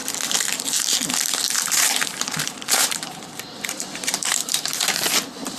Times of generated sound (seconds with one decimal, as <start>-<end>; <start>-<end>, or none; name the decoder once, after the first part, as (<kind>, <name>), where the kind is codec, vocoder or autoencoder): 0.8-4.7 (vocoder, BigVGAN v2)